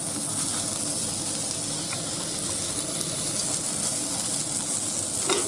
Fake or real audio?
real